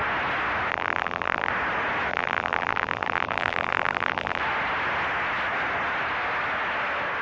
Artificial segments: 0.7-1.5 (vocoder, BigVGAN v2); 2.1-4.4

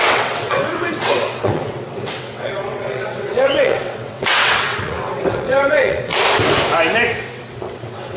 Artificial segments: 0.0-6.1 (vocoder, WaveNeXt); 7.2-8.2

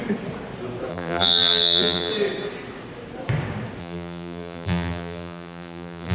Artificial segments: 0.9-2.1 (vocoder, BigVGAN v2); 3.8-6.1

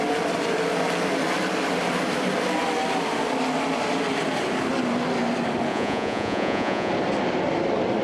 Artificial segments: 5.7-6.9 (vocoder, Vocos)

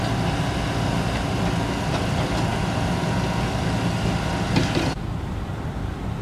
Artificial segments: none